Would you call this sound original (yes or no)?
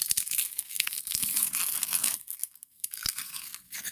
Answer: no